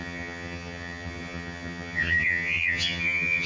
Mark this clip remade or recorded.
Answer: remade